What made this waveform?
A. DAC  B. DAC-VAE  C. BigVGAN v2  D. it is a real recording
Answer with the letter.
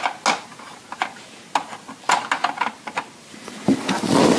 D